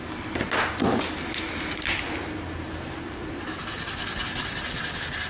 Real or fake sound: real